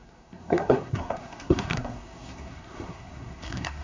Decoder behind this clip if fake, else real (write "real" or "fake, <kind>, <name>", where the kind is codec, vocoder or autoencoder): fake, codec, SNAC